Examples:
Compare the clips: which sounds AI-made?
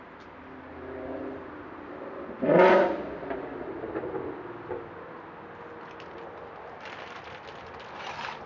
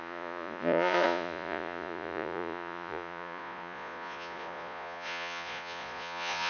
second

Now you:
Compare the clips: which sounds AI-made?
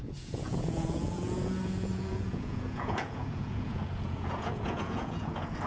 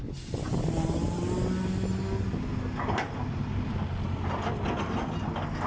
first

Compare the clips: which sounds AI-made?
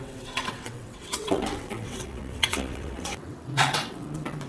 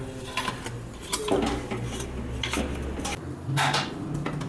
first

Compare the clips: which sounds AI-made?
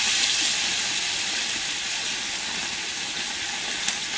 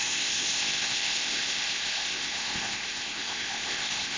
second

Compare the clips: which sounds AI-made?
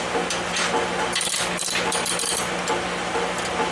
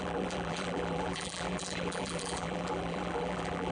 second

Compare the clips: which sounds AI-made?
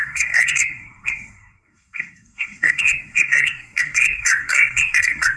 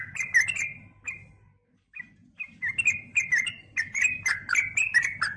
first